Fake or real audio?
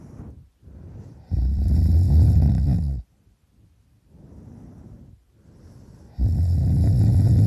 fake